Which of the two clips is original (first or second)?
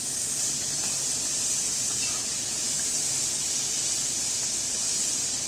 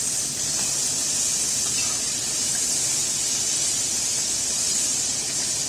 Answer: first